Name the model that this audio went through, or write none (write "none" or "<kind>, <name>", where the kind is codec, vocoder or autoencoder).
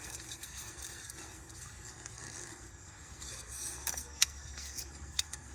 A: codec, SNAC